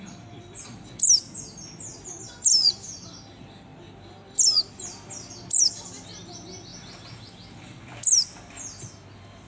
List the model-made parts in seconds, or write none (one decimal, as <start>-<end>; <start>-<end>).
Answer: none